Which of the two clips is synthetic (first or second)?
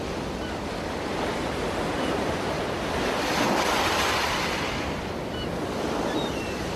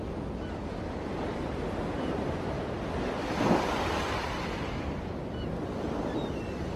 first